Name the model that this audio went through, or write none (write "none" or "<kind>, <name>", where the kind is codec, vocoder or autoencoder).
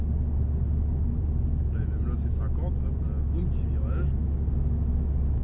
none